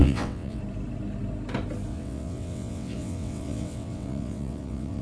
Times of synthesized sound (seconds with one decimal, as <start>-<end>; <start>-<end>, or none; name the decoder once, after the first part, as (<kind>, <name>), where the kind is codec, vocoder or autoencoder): 0.0-0.6 (vocoder, WaveNeXt); 1.9-5.0

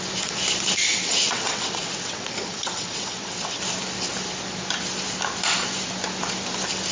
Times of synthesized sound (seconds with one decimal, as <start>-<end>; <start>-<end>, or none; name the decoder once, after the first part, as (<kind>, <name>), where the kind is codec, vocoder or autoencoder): 0.8-3.6 (vocoder, WaveNeXt)